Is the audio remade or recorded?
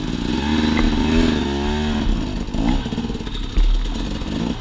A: recorded